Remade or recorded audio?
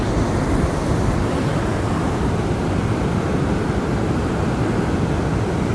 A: recorded